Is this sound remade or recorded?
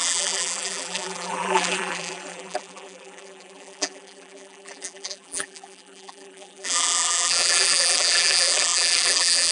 remade